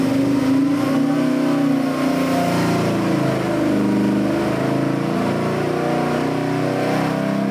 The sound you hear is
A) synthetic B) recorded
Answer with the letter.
B